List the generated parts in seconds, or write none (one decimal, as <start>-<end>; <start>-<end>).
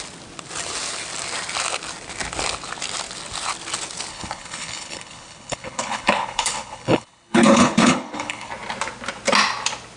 4.1-8.5